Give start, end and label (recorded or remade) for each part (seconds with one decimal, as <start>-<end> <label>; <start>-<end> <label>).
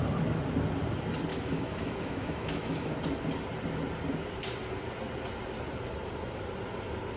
0.0-1.3 recorded; 1.3-2.9 remade; 2.9-7.2 recorded